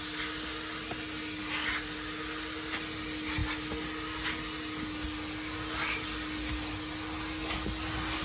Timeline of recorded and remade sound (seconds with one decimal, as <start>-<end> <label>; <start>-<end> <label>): 0.0-8.2 recorded